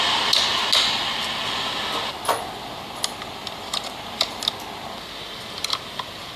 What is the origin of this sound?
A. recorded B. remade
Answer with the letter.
A